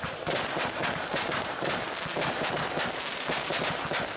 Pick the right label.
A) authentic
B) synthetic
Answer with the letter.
B